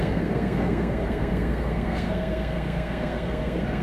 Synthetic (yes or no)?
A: yes